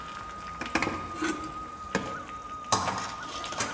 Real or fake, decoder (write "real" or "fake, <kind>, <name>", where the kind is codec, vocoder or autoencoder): real